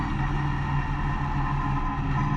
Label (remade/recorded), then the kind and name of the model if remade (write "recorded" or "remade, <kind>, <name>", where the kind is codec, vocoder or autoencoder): recorded